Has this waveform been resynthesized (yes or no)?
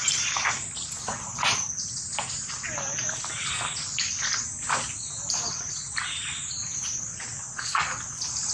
no